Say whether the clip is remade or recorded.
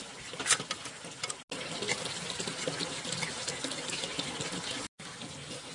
recorded